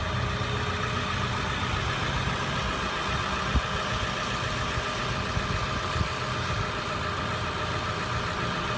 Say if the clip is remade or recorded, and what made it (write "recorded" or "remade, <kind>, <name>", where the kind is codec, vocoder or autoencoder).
recorded